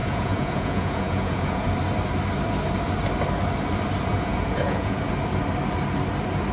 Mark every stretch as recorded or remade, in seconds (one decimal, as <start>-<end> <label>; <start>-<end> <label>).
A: 0.0-1.7 remade; 1.7-4.1 recorded; 4.1-5.1 remade; 5.1-6.5 recorded